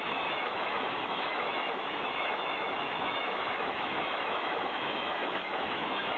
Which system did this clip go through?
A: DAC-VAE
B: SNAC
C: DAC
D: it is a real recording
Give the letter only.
A